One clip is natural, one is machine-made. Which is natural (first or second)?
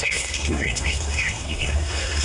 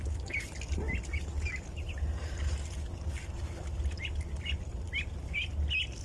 second